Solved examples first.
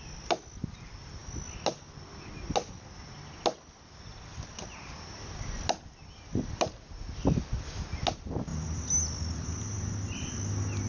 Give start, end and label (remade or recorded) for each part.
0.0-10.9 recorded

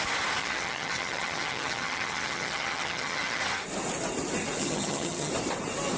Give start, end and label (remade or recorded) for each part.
0.0-0.4 recorded; 0.4-3.4 remade; 3.4-4.6 recorded; 4.6-5.3 remade; 5.3-6.0 recorded

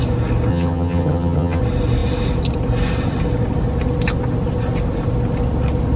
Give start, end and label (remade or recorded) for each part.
0.0-0.5 recorded; 0.5-1.6 remade; 1.6-6.0 recorded

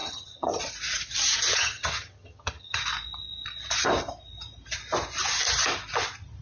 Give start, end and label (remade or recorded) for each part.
0.0-0.6 remade; 0.6-1.5 recorded; 1.5-2.8 remade; 2.8-6.4 recorded